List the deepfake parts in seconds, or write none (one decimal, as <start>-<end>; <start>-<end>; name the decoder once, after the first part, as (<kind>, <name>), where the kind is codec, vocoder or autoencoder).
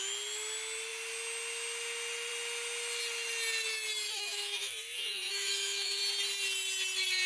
4.1-6.0 (autoencoder, DAC-VAE)